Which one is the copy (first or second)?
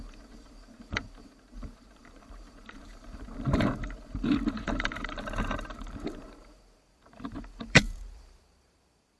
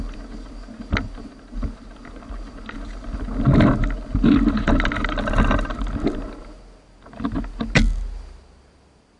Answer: first